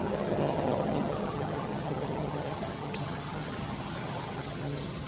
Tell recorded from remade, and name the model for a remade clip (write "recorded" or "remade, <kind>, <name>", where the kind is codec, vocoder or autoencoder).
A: remade, vocoder, HiFi-GAN